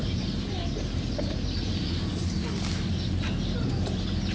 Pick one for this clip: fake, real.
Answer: real